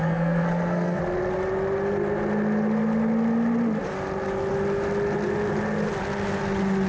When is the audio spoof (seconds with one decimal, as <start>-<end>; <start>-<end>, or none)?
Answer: 0.0-1.0